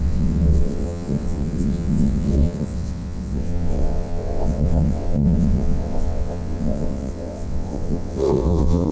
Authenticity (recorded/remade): remade